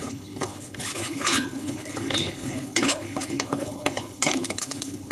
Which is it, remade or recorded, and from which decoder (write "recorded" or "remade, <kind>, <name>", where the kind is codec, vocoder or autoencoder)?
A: remade, codec, HILCodec